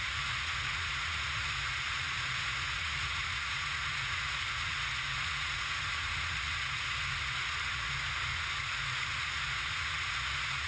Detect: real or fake fake